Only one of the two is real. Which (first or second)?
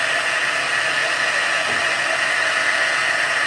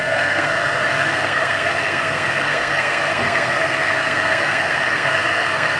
first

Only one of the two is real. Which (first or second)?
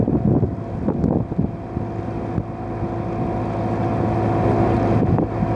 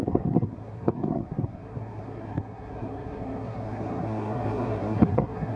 first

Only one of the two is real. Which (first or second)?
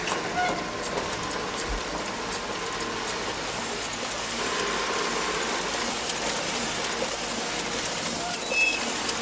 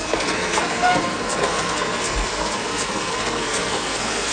first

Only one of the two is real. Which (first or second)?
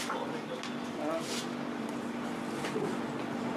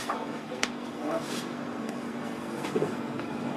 first